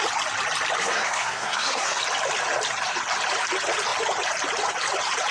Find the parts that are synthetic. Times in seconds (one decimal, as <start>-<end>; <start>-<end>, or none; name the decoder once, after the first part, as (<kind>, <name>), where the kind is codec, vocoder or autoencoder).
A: 0.8-2.0 (codec, SNAC)